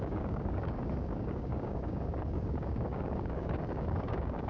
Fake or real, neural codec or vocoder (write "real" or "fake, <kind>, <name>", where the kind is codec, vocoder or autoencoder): fake, codec, DAC